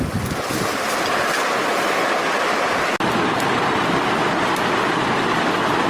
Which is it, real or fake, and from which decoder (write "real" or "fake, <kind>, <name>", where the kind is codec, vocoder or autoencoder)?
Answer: real